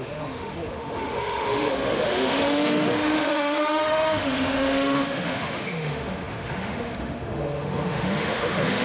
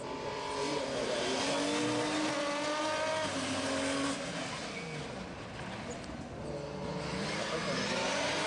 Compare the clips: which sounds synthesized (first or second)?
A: first